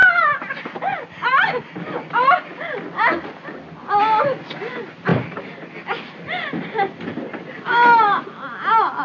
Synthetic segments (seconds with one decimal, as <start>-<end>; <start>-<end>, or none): none